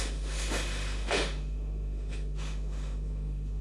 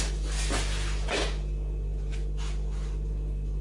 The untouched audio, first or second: second